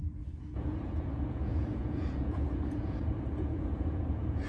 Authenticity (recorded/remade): remade